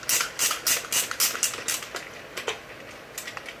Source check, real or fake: real